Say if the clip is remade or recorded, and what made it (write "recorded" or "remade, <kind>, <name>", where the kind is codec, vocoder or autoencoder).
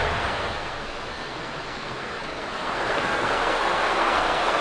remade, codec, SNAC